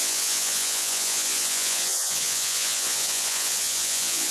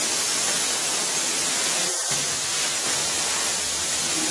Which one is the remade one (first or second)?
first